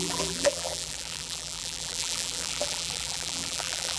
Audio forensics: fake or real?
fake